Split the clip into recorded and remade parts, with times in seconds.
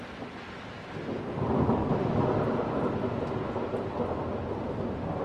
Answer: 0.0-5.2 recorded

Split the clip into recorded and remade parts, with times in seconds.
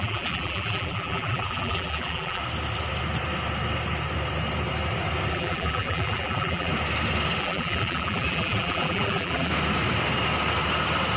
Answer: 0.0-2.4 remade; 2.4-5.3 recorded; 5.3-6.7 remade; 6.7-7.4 recorded; 7.4-9.5 remade; 9.5-11.2 recorded